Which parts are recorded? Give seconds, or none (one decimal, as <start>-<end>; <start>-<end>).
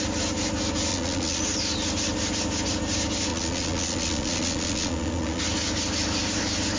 0.0-0.9; 1.4-3.3; 5.4-6.8